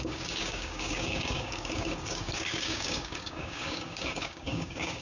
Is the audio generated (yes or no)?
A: yes